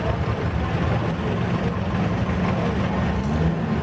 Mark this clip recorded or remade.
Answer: recorded